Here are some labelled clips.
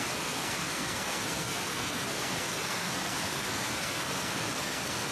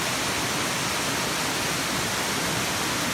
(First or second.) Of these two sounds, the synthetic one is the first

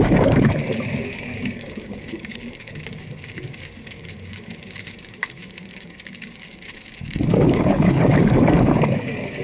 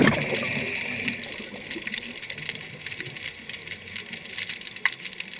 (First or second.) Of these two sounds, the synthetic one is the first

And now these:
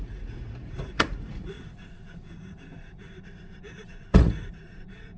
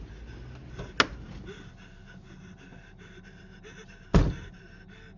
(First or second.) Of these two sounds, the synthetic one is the first